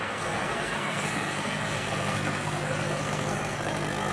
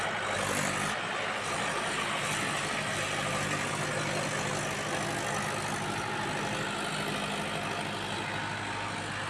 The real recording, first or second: second